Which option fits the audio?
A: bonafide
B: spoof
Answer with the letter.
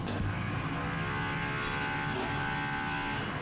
A